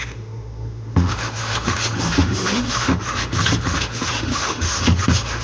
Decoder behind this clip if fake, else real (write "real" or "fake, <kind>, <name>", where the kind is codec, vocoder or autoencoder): fake, autoencoder, DAC-VAE